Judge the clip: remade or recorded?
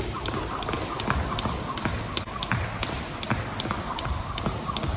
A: recorded